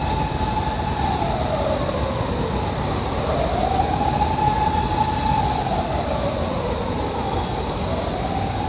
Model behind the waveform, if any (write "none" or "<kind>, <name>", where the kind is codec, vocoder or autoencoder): none